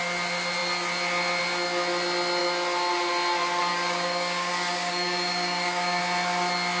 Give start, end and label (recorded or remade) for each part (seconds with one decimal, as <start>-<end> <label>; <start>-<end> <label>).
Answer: 0.0-3.7 recorded; 3.7-6.0 remade; 6.0-6.8 recorded